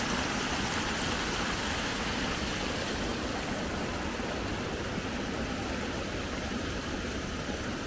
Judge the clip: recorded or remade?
recorded